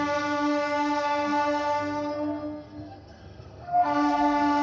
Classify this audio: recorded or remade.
remade